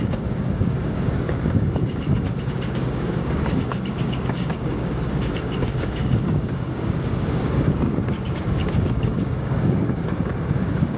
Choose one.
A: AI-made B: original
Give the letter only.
A